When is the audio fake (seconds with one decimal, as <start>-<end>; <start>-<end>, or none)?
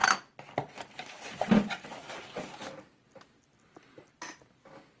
none